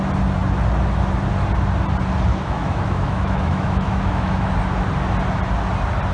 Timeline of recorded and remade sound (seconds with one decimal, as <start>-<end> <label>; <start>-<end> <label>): 0.0-2.3 recorded; 2.3-4.5 remade; 4.5-6.1 recorded